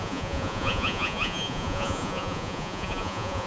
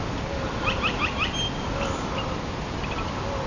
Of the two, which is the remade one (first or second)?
first